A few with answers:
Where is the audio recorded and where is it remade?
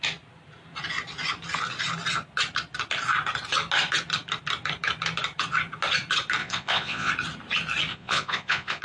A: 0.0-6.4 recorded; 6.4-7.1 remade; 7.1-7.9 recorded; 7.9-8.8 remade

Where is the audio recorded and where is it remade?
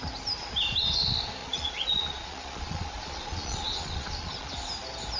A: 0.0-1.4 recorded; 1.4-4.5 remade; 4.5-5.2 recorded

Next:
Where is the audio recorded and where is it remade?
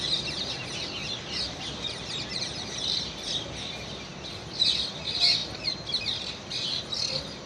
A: 0.0-7.5 recorded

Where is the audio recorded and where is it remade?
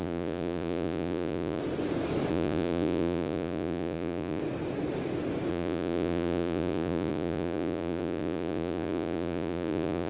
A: 0.0-1.6 remade; 1.6-2.3 recorded; 2.3-4.4 remade; 4.4-5.5 recorded; 5.5-10.1 remade